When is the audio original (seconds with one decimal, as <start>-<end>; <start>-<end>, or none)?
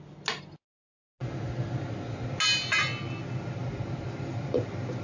0.0-5.0